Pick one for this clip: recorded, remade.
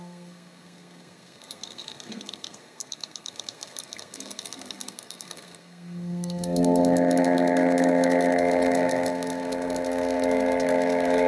remade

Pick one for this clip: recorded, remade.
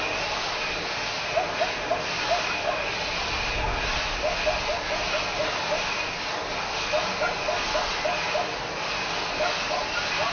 recorded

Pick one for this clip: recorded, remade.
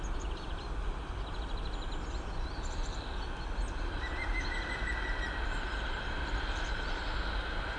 recorded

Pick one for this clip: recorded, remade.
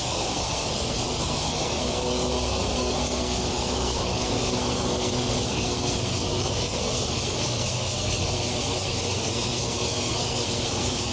remade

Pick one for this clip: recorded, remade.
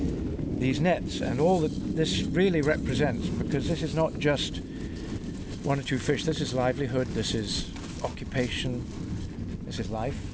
recorded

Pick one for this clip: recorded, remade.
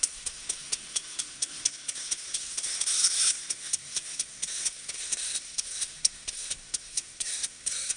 remade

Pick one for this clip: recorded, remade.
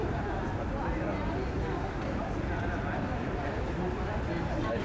recorded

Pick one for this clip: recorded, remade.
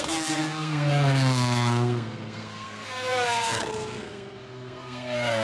remade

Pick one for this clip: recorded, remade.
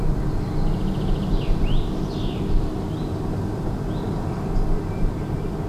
recorded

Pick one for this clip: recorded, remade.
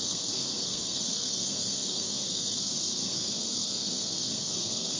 remade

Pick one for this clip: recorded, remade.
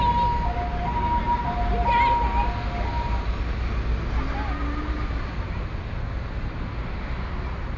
recorded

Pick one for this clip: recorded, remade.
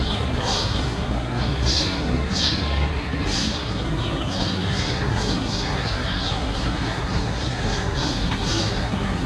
remade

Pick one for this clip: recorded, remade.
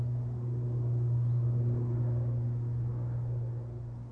recorded